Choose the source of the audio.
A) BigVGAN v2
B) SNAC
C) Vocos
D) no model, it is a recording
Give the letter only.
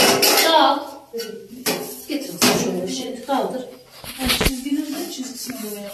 D